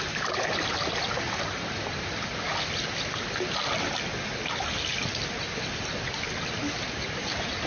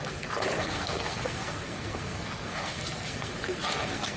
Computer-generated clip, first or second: second